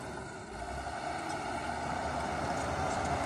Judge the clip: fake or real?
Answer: fake